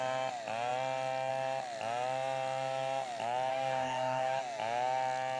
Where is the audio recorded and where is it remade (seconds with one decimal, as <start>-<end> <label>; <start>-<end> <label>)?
0.0-3.5 recorded; 3.5-4.4 remade; 4.4-5.4 recorded